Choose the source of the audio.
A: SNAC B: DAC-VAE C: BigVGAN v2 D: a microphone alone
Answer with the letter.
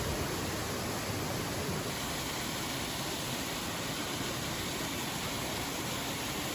D